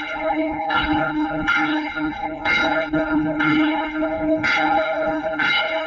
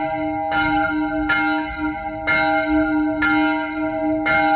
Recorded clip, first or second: second